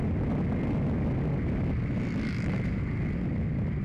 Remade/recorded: recorded